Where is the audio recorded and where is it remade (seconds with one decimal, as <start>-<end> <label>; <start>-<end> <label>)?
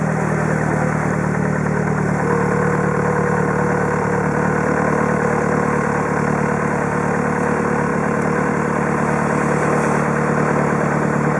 0.0-7.9 recorded; 7.9-8.5 remade; 8.5-11.4 recorded